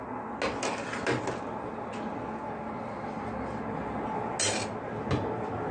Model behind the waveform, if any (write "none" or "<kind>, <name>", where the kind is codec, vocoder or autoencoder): none